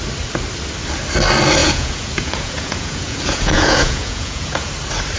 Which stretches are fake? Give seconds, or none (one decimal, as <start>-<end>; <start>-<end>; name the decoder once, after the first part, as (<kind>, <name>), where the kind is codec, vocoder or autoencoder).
1.6-4.7 (vocoder, Vocos)